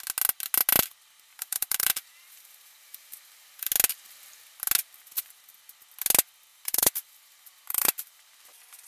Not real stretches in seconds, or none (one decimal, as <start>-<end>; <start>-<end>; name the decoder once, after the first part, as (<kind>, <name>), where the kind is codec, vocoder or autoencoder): 1.3-3.7 (vocoder, BigVGAN v2); 6.5-8.2